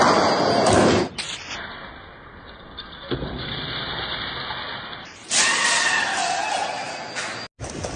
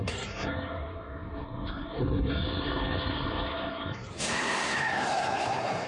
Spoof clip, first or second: second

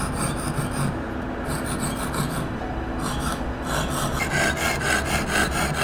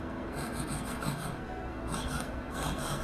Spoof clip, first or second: second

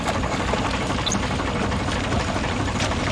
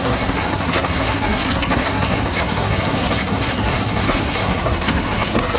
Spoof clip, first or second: second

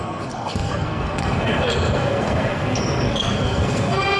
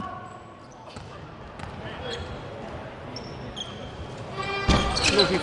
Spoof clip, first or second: first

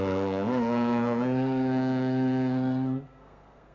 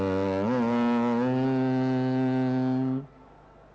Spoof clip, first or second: first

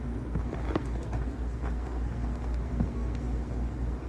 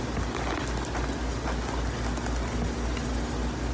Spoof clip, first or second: first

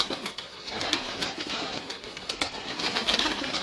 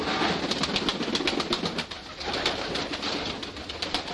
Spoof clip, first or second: first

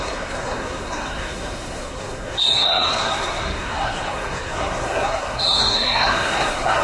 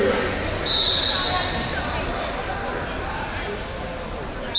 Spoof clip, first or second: first